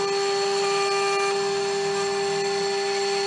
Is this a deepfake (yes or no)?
no